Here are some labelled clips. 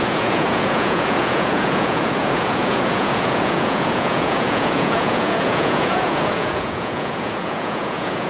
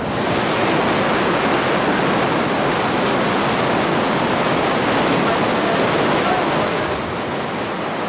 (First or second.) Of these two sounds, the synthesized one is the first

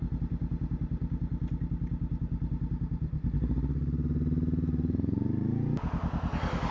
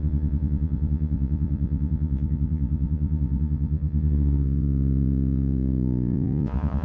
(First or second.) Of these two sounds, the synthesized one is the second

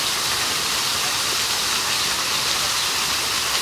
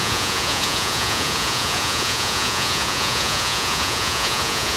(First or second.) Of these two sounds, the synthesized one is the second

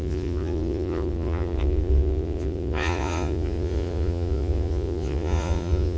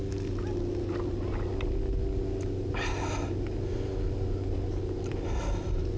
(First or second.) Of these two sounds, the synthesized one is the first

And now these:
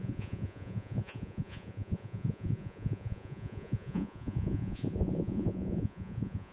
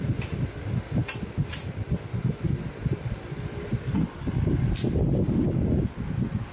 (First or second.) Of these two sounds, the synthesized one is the first